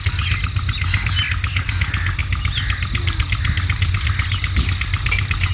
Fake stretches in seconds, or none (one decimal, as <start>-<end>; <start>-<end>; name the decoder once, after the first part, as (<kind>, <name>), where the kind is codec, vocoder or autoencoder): none